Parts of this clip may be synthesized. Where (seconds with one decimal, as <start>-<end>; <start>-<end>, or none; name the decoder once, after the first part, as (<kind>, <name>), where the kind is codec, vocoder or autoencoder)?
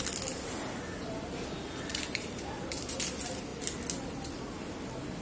1.9-3.0 (vocoder, BigVGAN v2)